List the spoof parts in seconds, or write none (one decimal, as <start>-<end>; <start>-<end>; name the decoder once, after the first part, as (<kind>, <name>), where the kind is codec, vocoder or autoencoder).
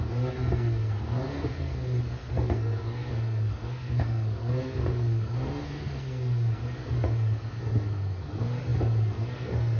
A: 0.0-9.8 (codec, SNAC)